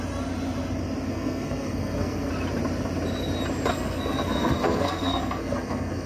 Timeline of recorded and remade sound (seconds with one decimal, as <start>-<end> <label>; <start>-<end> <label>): 0.0-1.1 recorded; 1.1-2.3 remade; 2.3-3.7 recorded; 3.7-6.1 remade